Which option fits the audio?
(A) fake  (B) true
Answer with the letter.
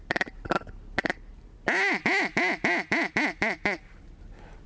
B